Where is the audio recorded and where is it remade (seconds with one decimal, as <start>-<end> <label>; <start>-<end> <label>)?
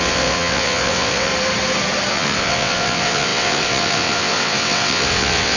0.0-1.3 remade; 1.3-2.1 recorded; 2.1-5.6 remade